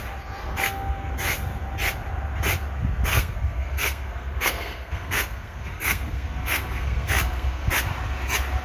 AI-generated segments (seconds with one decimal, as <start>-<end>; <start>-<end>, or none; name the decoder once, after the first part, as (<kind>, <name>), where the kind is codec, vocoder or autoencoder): 0.4-1.1 (codec, SNAC); 3.1-7.7